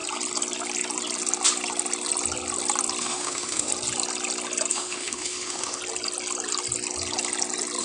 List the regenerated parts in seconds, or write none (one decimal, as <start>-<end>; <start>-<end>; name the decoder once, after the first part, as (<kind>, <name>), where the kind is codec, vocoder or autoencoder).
3.0-3.7 (autoencoder, DAC-VAE); 4.7-5.8